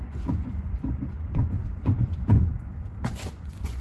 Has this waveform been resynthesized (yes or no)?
yes